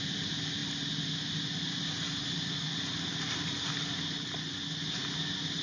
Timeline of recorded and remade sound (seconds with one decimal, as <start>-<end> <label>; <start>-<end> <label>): 0.0-5.6 recorded